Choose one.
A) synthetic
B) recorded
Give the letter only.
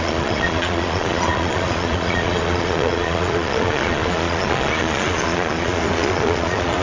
A